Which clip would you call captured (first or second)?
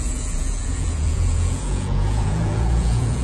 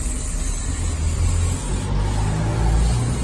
second